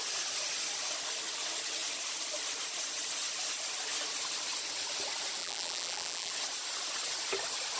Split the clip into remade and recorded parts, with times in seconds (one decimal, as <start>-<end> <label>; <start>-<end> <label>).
0.0-5.4 recorded; 5.4-6.3 remade; 6.3-7.8 recorded